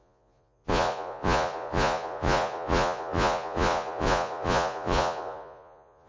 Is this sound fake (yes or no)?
yes